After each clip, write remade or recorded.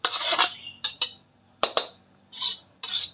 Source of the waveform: remade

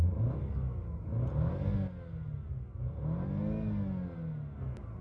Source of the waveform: recorded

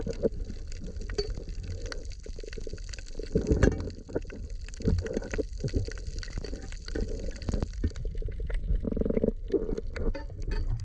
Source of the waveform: recorded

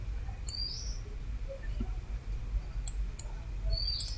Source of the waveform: recorded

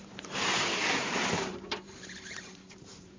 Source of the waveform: remade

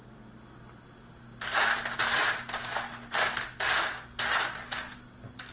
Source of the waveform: recorded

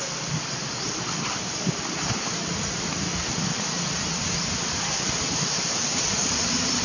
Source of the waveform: recorded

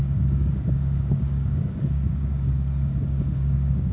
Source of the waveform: remade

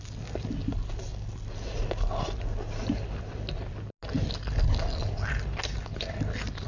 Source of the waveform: recorded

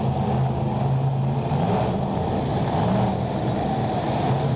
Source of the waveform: recorded